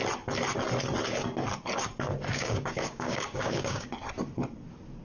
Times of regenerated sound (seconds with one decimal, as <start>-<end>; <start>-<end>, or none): 2.3-3.9

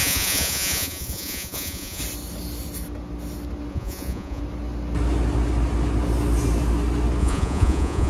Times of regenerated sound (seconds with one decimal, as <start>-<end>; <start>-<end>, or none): 0.0-2.0; 3.7-4.4; 7.2-8.1

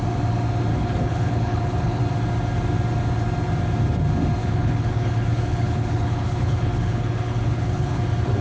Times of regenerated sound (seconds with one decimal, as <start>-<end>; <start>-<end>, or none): 0.7-2.0; 4.4-8.0

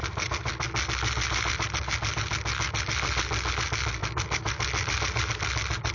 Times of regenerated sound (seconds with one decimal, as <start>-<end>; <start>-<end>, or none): none

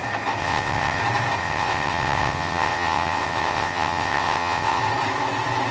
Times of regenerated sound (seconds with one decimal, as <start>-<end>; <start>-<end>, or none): 0.4-1.0; 1.4-4.8

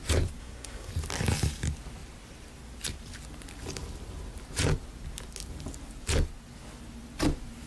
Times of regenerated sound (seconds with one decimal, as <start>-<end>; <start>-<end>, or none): 0.4-0.9

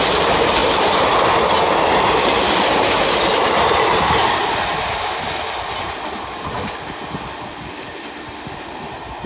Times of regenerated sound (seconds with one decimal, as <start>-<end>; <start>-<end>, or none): none

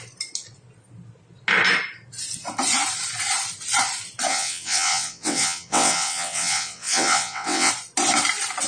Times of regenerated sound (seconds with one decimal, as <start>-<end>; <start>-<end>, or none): 4.3-7.7